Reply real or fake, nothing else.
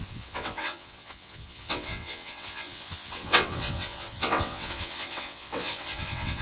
fake